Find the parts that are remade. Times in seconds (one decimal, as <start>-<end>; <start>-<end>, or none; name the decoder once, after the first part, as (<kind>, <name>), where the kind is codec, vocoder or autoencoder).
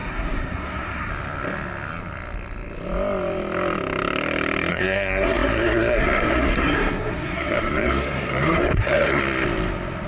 0.0-1.1 (codec, SNAC); 4.7-9.2